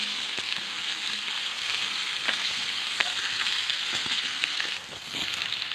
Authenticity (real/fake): fake